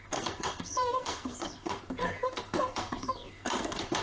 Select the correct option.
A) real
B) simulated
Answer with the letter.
B